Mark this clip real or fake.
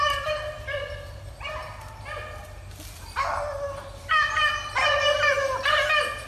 real